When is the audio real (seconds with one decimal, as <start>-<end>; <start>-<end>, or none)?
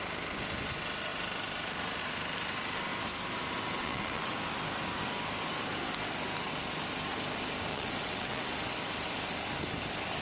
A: 0.0-3.8; 4.3-7.7; 8.4-10.2